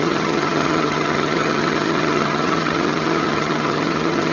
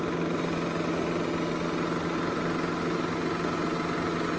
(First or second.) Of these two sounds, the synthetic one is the first